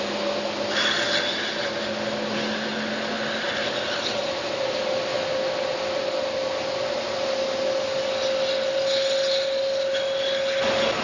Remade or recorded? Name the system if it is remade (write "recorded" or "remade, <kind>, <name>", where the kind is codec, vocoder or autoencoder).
recorded